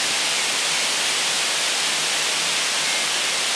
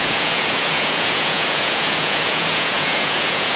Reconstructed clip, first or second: second